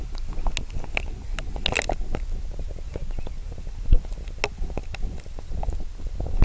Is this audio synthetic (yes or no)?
no